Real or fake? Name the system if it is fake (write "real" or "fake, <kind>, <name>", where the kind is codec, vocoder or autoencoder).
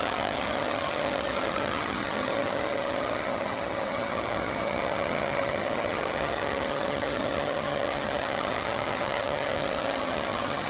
fake, vocoder, HiFi-GAN